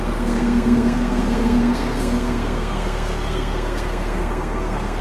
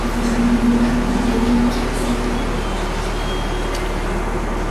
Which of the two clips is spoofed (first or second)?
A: first